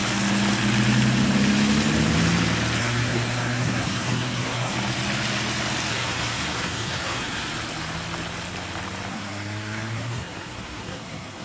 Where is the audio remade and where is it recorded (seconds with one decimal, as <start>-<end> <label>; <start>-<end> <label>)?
0.0-2.8 recorded; 2.8-4.7 remade; 4.7-5.9 recorded; 5.9-7.5 remade; 7.5-9.1 recorded; 9.1-11.4 remade